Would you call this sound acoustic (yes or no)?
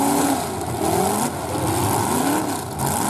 yes